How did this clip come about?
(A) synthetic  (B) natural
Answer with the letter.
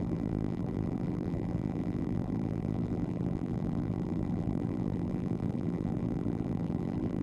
A